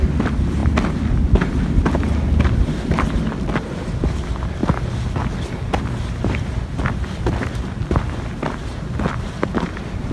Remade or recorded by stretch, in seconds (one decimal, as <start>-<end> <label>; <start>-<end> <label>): 0.0-10.1 recorded

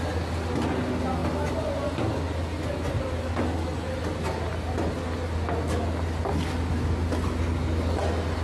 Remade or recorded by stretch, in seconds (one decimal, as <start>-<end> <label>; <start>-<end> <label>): 0.0-8.4 recorded